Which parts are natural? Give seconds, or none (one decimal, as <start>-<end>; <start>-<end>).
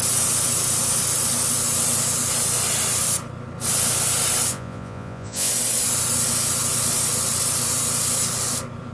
0.0-4.5; 5.5-8.9